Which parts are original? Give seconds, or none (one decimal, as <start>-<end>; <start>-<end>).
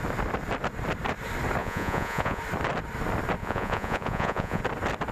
0.0-1.6; 2.4-3.4; 4.6-5.1